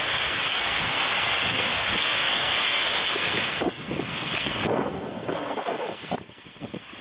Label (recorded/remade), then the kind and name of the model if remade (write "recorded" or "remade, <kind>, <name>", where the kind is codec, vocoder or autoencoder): remade, codec, SNAC